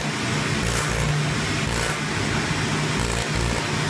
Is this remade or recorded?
recorded